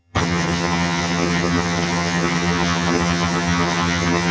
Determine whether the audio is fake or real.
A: fake